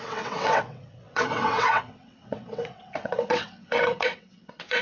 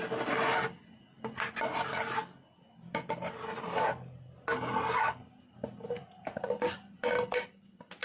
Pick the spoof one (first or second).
first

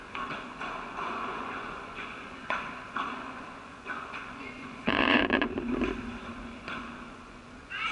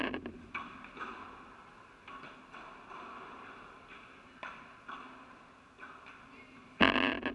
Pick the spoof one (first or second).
first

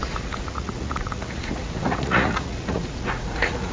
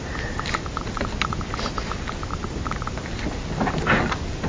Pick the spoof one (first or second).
first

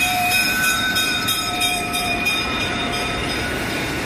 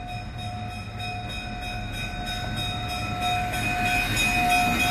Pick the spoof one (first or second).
first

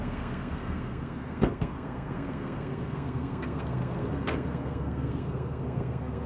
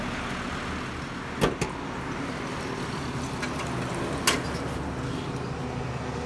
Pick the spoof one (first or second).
first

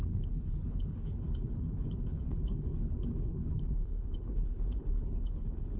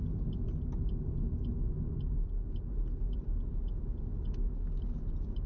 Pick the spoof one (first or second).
first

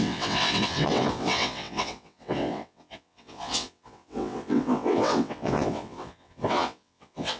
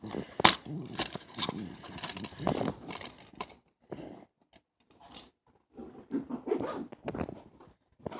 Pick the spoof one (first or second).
first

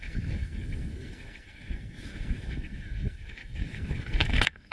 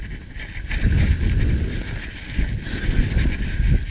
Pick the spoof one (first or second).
first